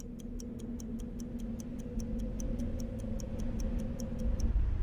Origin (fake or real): real